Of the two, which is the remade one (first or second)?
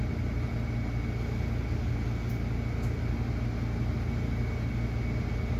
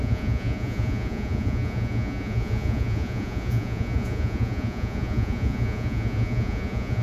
second